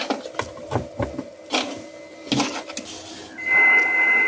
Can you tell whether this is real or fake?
real